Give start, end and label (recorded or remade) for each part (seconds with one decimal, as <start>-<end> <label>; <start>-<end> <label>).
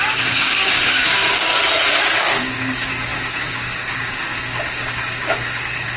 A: 0.0-1.5 remade; 1.5-2.2 recorded; 2.2-6.0 remade